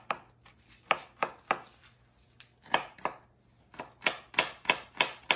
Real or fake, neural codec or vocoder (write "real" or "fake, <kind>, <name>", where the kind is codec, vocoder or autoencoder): real